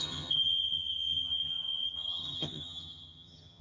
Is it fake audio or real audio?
fake